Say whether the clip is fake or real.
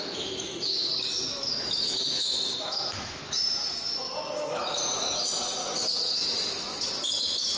fake